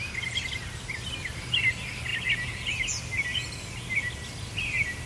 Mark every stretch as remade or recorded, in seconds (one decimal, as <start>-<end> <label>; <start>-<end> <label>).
0.0-5.1 recorded